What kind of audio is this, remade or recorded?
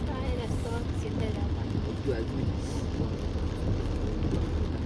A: recorded